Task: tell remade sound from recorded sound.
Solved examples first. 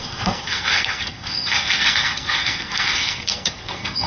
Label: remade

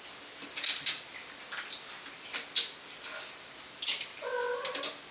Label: recorded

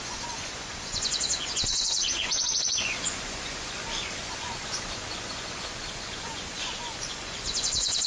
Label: remade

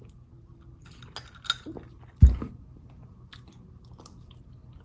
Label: recorded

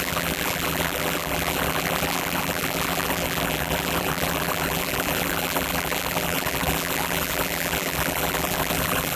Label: remade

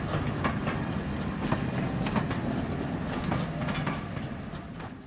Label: recorded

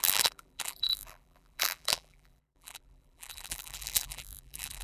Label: remade